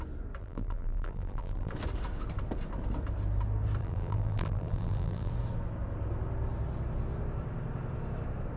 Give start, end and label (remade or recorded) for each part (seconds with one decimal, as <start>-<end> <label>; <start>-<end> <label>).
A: 0.0-0.4 recorded; 0.4-1.7 remade; 1.7-3.8 recorded; 3.8-5.3 remade; 5.3-8.6 recorded